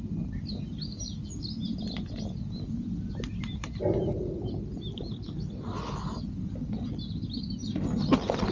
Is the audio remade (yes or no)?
no